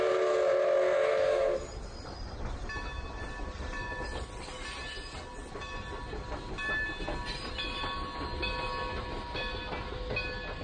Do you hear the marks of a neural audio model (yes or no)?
no